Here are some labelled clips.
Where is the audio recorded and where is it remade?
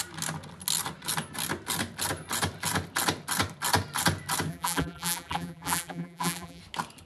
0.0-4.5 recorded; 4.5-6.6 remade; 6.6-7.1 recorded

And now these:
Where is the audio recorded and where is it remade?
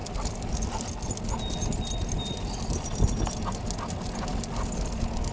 0.0-5.3 recorded